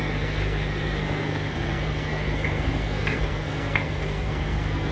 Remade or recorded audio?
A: remade